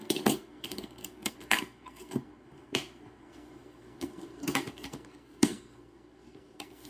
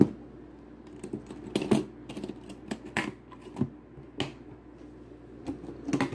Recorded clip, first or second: second